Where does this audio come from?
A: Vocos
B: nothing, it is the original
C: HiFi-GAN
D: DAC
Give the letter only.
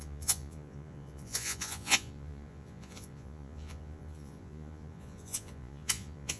A